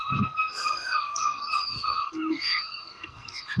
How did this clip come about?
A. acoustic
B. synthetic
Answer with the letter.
B